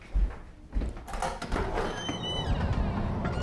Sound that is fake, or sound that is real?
real